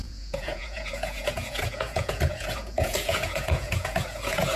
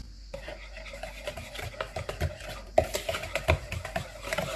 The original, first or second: second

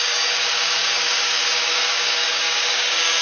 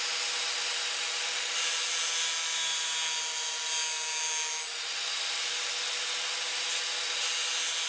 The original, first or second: second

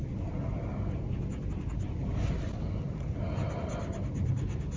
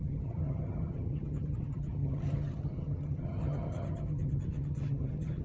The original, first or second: first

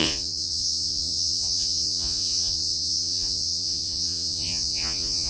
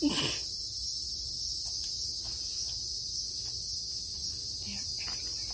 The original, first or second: second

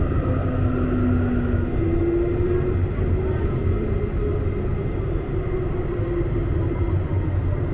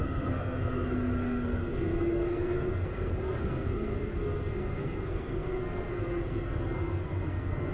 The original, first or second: first